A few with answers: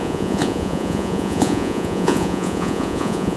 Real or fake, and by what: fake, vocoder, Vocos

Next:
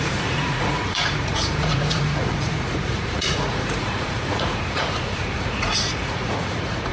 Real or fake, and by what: fake, vocoder, Vocos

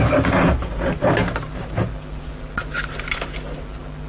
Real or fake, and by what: real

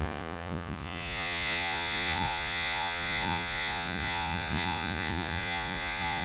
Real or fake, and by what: fake, vocoder, Vocos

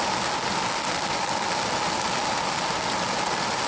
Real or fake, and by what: real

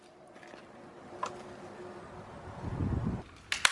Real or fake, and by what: real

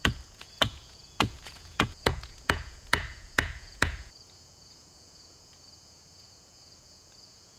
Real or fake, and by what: fake, vocoder, Vocos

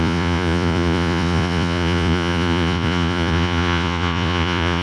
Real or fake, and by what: fake, vocoder, Vocos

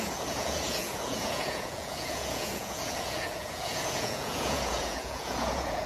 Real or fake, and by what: fake, vocoder, Vocos